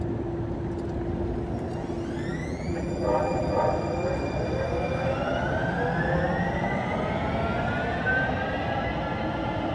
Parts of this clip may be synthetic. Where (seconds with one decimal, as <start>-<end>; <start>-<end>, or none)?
2.3-3.6